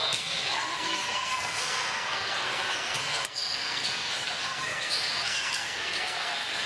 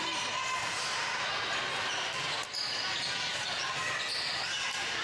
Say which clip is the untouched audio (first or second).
second